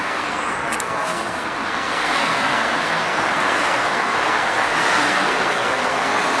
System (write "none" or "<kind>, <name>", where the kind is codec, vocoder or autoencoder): codec, SNAC